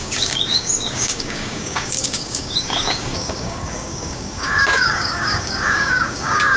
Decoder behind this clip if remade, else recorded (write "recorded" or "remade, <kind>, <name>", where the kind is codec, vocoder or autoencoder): remade, codec, DAC